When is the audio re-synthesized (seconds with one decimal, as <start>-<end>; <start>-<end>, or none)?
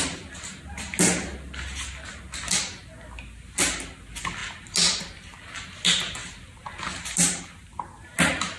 none